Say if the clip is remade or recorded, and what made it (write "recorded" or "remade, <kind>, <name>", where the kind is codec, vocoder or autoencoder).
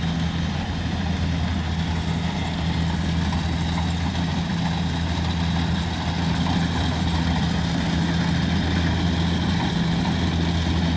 recorded